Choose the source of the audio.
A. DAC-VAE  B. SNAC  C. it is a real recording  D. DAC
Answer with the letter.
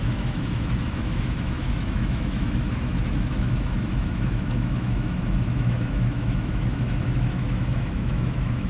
A